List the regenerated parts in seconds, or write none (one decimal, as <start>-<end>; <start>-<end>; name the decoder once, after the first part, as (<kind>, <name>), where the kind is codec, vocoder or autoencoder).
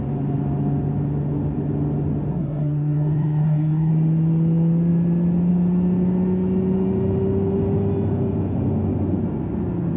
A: 2.3-3.9 (codec, SNAC)